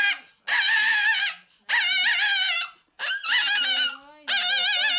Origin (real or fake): real